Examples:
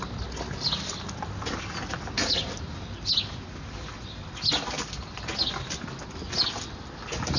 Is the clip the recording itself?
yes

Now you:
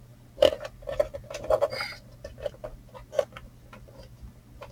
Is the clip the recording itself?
no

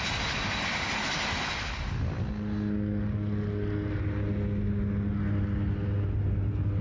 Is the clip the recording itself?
yes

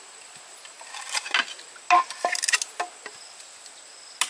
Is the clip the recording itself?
yes